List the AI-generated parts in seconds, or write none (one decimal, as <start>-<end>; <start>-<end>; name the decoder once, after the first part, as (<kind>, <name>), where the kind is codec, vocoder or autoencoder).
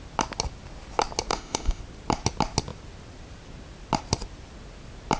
1.3-1.8 (autoencoder, DAC-VAE)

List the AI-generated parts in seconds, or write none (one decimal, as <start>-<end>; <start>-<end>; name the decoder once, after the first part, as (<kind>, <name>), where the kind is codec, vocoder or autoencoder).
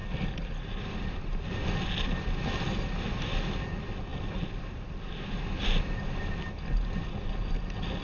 none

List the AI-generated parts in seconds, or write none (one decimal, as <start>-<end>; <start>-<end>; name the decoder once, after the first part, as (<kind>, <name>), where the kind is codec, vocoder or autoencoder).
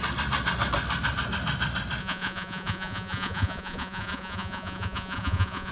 2.0-5.7 (vocoder, Vocos)